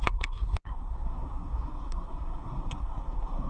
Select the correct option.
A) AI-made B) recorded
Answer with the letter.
A